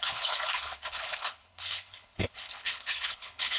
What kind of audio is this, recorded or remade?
remade